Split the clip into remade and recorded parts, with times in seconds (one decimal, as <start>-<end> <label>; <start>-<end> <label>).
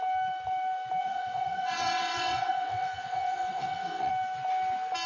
0.0-1.0 recorded; 1.0-4.1 remade; 4.1-5.1 recorded